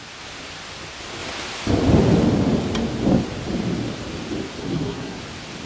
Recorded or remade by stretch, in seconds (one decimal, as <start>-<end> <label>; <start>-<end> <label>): 0.0-4.6 recorded; 4.6-5.2 remade; 5.2-5.7 recorded